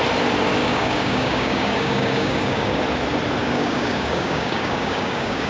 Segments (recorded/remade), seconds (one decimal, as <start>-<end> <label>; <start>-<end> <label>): 0.0-0.6 recorded; 0.6-2.8 remade; 2.8-3.4 recorded; 3.4-5.5 remade